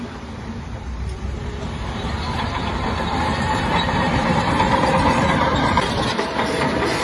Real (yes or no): no